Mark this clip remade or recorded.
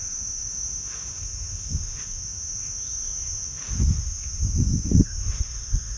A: remade